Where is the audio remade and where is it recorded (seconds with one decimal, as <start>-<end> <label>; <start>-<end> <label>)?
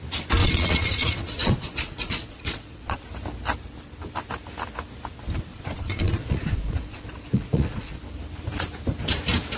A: 0.0-0.4 recorded; 0.4-3.0 remade; 3.0-5.5 recorded; 5.5-8.0 remade; 8.0-9.6 recorded